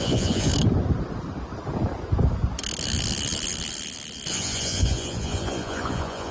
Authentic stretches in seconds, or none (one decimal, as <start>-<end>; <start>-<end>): 0.5-4.3